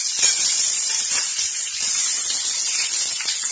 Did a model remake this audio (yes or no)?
yes